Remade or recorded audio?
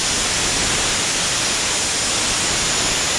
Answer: recorded